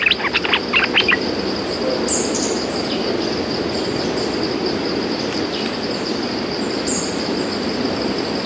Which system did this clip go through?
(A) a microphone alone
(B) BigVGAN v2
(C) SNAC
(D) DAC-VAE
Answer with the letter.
A